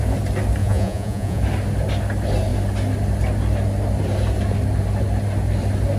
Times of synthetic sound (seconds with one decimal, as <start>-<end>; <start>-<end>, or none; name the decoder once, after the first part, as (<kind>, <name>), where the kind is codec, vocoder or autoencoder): 0.6-1.4 (vocoder, Vocos)